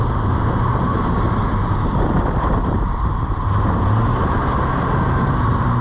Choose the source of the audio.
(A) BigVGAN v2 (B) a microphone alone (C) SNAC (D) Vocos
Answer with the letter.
A